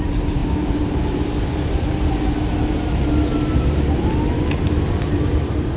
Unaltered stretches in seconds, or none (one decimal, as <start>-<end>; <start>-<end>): 0.0-5.8